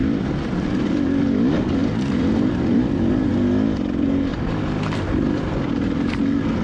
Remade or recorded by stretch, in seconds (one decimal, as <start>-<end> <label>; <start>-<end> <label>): 0.0-0.7 remade; 0.7-1.8 recorded; 1.8-3.3 remade; 3.3-4.3 recorded; 4.3-5.7 remade; 5.7-6.6 recorded